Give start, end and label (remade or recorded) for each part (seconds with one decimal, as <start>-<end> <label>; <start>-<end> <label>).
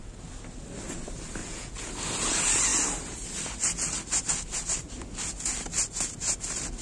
0.0-1.4 recorded; 1.4-1.9 remade; 1.9-6.8 recorded